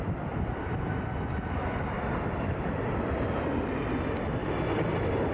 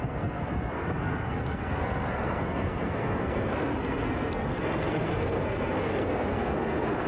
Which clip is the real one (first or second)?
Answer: first